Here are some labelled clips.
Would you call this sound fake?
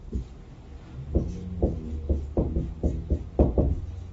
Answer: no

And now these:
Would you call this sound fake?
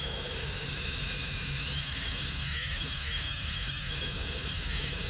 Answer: yes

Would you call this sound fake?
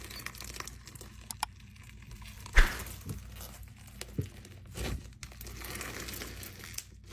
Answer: no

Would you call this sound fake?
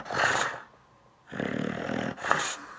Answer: no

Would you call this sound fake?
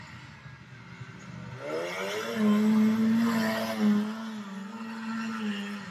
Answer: no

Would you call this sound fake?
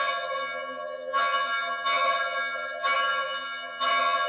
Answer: yes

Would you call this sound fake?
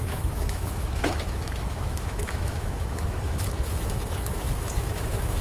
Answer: yes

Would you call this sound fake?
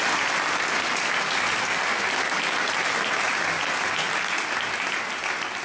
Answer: no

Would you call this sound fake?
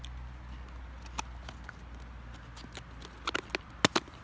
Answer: no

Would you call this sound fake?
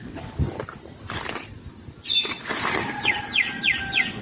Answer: no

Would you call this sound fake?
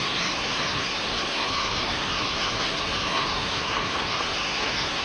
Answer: yes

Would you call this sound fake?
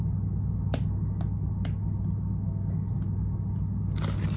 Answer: no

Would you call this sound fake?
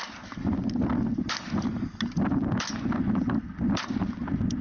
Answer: no